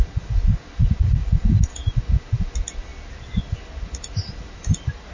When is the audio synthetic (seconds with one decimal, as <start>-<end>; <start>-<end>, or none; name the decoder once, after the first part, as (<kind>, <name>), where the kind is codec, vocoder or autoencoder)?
none